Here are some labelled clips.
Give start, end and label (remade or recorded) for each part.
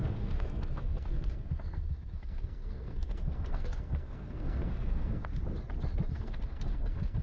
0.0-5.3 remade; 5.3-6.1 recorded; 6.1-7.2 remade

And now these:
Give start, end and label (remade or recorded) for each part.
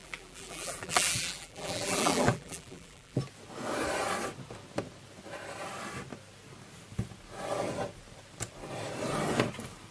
0.0-3.2 remade; 3.2-9.9 recorded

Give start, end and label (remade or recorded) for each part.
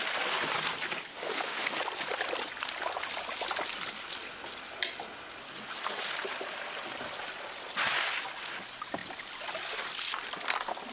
0.0-1.1 recorded; 1.1-1.8 remade; 1.8-10.9 recorded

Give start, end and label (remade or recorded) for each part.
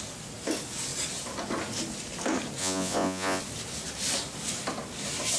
0.0-2.6 recorded; 2.6-3.4 remade; 3.4-5.4 recorded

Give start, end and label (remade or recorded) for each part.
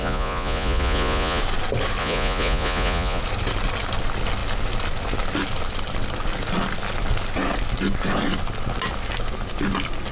0.0-1.4 remade; 1.4-2.0 recorded; 2.0-3.2 remade; 3.2-10.1 recorded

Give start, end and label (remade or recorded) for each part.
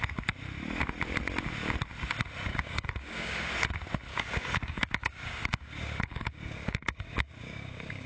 0.0-2.5 recorded; 2.5-3.5 remade; 3.5-4.1 recorded; 4.1-8.1 remade